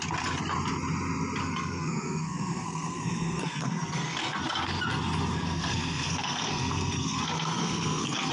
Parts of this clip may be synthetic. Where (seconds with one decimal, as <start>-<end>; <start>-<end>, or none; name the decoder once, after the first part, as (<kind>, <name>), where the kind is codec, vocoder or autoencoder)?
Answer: 1.4-4.4 (codec, SNAC); 5.3-8.3